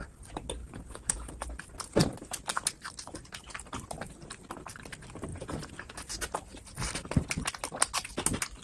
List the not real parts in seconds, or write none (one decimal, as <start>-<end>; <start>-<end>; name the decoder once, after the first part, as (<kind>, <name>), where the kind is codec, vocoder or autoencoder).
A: 0.6-1.3 (vocoder, Vocos); 5.3-6.1